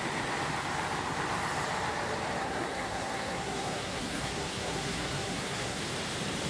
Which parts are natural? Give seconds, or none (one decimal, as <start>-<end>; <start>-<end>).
0.0-2.4; 5.8-6.5